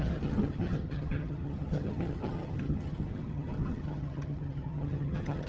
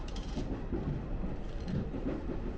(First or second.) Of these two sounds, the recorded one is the second